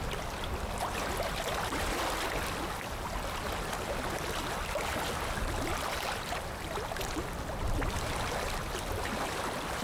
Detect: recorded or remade recorded